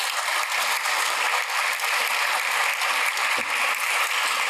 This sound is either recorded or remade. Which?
recorded